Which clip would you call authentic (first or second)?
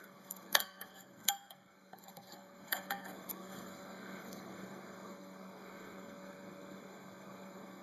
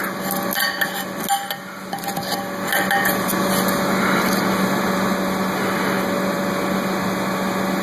second